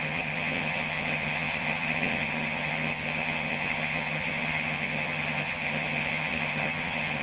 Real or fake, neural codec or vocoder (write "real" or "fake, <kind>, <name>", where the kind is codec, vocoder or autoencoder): fake, vocoder, HiFi-GAN